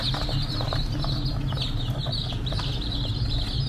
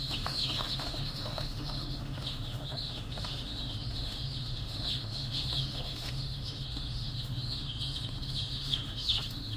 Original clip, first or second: first